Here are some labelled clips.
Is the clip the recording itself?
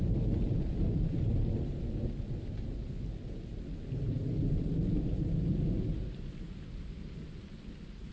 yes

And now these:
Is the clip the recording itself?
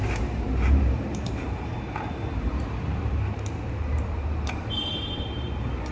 no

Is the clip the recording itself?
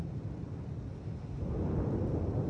yes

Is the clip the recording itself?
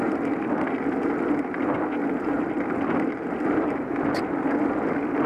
yes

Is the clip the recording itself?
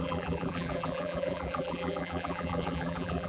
no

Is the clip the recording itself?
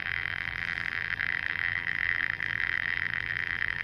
no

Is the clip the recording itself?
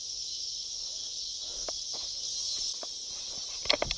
yes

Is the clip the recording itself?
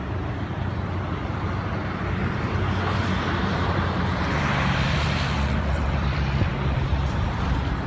no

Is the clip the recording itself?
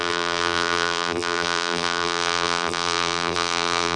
no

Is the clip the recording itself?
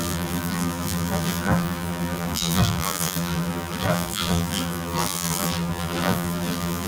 no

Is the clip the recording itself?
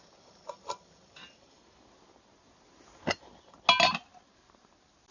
yes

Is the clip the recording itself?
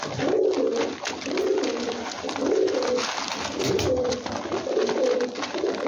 yes